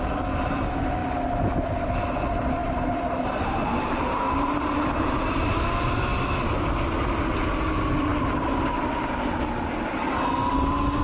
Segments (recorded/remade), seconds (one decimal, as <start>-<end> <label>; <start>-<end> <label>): 0.0-2.6 recorded; 2.6-5.5 remade; 5.5-11.0 recorded